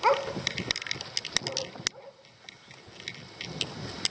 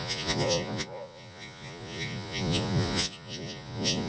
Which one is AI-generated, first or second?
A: second